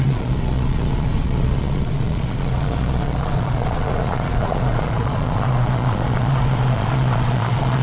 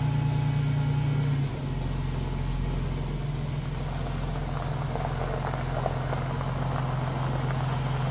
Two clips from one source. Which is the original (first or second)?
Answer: second